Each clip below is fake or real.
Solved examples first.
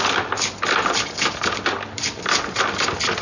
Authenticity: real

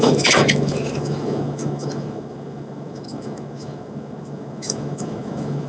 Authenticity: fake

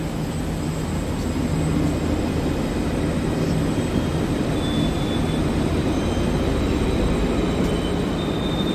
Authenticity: real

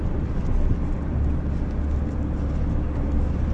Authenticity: real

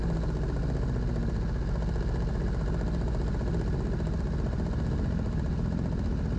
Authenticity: real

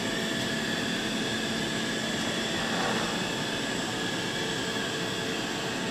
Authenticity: real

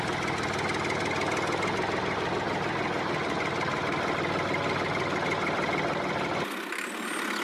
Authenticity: real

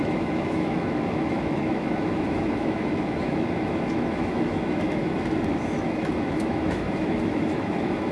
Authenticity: fake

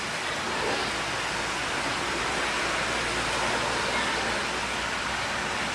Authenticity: real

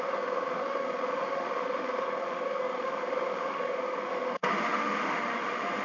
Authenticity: fake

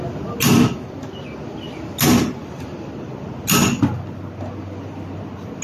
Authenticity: real